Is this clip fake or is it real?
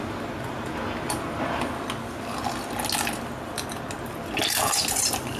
real